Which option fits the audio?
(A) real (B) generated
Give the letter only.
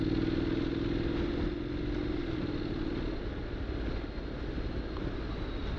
A